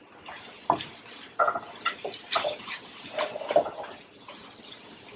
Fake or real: real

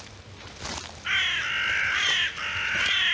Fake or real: real